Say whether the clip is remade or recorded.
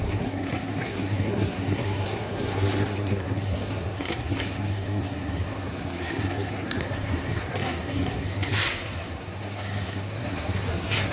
remade